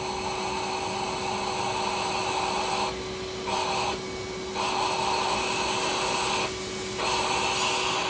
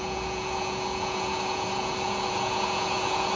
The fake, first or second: second